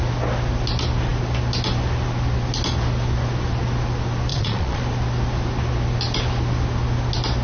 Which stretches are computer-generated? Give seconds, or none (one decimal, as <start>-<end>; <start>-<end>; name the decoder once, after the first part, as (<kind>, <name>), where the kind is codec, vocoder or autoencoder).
4.3-4.8 (vocoder, Vocos)